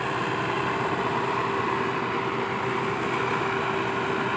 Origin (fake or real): real